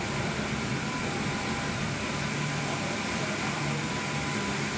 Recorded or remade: remade